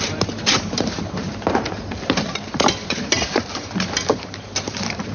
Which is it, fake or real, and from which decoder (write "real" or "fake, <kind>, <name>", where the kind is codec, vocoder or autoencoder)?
fake, vocoder, BigVGAN v2